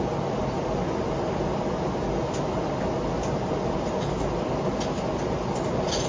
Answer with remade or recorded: recorded